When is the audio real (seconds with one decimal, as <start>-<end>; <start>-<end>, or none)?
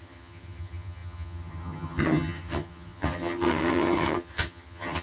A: none